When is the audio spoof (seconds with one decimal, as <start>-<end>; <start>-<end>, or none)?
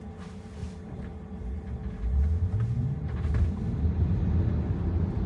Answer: none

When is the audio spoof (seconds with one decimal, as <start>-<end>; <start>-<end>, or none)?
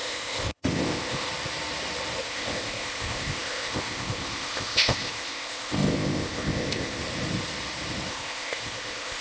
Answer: 0.0-1.3; 2.2-7.0; 8.1-9.2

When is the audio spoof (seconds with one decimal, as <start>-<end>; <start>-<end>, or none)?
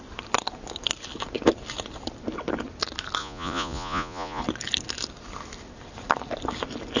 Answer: 3.2-4.4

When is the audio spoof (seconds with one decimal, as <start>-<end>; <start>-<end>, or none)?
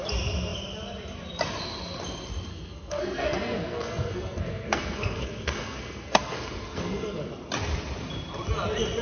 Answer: 2.5-7.3